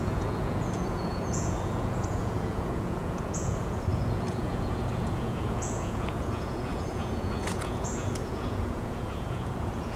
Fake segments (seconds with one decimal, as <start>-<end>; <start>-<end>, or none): 0.0-10.0